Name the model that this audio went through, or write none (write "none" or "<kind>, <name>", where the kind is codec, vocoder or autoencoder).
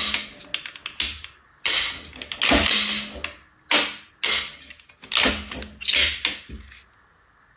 none